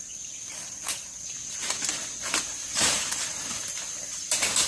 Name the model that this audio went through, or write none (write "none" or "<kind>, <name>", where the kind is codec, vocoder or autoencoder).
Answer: none